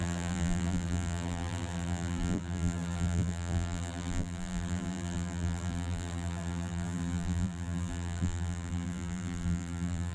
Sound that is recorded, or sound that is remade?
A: remade